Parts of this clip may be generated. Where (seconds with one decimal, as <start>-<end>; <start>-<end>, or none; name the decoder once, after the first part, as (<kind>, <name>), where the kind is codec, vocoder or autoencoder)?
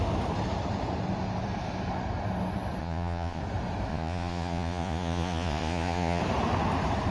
2.8-3.4 (vocoder, Vocos); 3.9-6.2